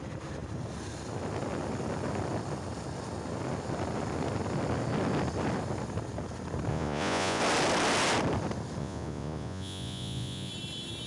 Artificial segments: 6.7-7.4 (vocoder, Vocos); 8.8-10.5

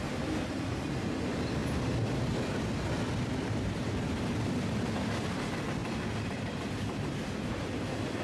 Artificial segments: 1.6-4.8 (vocoder, BigVGAN v2); 5.8-6.8

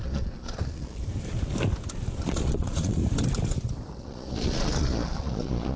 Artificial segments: 0.0-1.0 (vocoder, Vocos); 2.3-3.0; 3.9-5.8

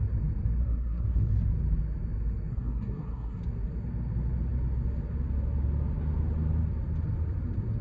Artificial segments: 0.6-1.3 (codec, SNAC); 2.5-3.4

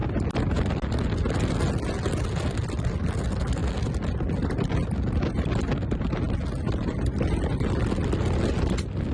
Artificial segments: none